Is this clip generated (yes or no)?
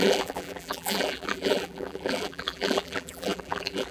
yes